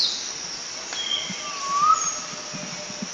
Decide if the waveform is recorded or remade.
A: recorded